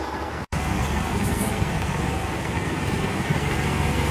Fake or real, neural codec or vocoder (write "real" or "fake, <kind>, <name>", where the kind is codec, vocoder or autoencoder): fake, codec, SNAC